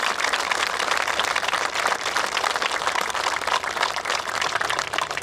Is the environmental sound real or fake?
fake